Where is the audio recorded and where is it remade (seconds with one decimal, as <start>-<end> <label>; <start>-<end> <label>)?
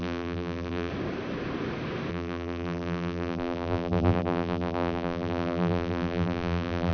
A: 0.0-0.9 remade; 0.9-2.1 recorded; 2.1-6.9 remade